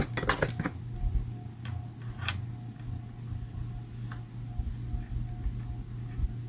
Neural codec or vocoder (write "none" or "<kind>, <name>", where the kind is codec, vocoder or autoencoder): none